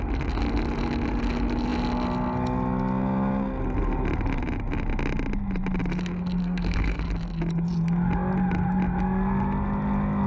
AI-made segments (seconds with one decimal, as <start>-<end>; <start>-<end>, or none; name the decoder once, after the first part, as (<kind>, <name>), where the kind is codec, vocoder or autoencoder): 6.4-7.0 (codec, SNAC)